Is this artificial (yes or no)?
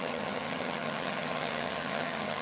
yes